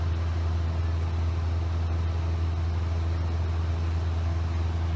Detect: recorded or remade recorded